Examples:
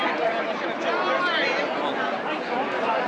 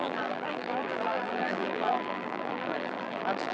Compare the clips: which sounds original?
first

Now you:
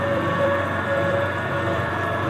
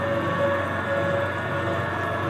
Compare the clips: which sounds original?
second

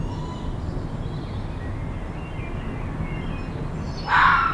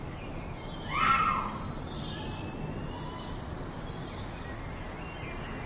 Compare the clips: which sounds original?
first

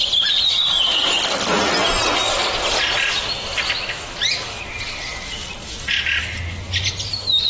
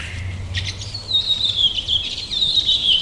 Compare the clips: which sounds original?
first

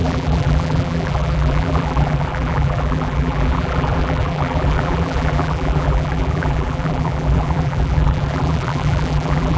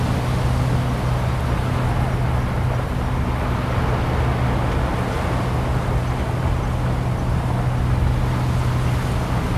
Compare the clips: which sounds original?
second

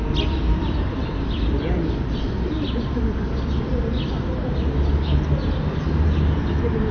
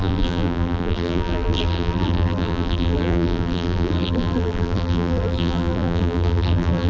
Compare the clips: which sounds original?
first